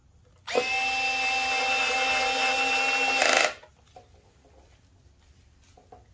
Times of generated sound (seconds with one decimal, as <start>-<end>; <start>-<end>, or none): none